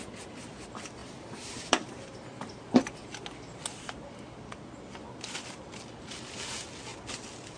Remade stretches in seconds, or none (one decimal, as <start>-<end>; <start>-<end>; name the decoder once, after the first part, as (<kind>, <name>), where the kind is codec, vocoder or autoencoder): 1.0-2.4 (vocoder, BigVGAN v2); 6.9-7.6